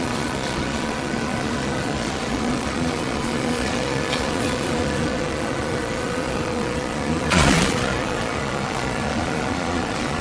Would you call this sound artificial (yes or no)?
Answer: yes